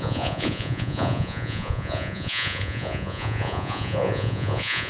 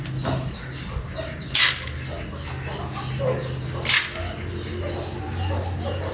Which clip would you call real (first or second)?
second